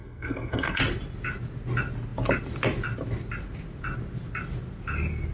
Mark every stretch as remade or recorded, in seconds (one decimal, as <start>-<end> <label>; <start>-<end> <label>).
0.0-0.8 remade; 0.8-5.3 recorded